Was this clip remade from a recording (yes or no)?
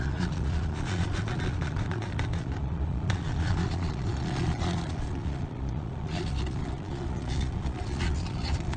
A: yes